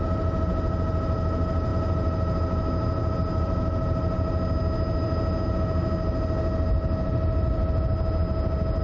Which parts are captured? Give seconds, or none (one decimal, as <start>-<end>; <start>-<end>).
0.0-8.8